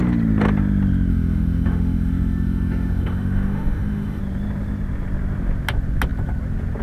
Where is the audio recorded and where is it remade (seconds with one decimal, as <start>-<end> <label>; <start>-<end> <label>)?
0.0-1.1 recorded; 1.1-4.2 remade; 4.2-6.8 recorded